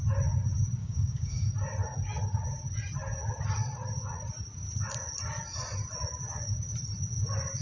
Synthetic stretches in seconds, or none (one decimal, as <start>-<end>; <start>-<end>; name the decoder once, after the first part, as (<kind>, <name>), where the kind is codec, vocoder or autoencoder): 0.8-1.5 (codec, DAC)